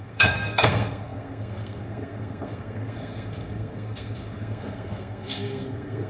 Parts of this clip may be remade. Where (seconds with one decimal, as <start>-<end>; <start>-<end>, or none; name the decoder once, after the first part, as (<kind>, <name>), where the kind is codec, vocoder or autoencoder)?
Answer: 0.0-6.1 (codec, SNAC)